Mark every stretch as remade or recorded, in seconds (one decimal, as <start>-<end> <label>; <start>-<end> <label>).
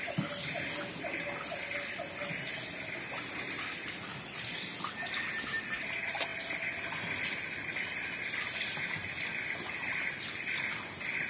0.0-11.3 recorded